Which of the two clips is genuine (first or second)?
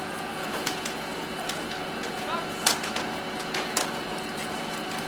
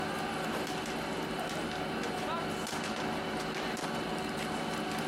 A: second